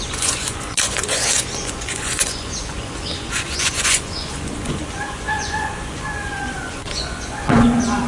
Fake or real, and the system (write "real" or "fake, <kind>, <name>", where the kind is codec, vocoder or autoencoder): fake, vocoder, Vocos